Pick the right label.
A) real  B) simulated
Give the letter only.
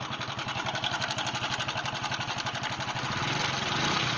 A